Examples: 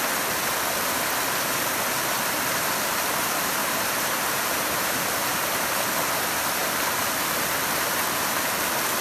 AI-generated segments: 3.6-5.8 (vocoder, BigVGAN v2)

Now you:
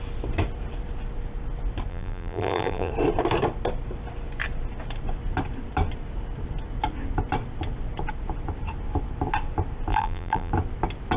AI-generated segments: 1.9-2.9 (vocoder, BigVGAN v2); 9.9-10.5

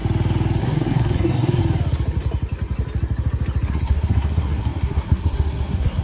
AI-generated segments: 0.6-1.6 (codec, SNAC); 3.7-6.0